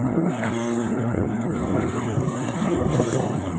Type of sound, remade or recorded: remade